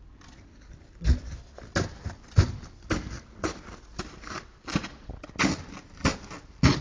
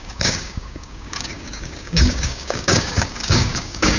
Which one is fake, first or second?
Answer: second